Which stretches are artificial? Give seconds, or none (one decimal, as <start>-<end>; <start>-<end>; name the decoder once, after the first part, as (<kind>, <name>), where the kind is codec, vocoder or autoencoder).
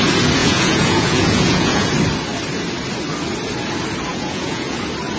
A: 0.4-1.9 (vocoder, Vocos); 4.1-4.8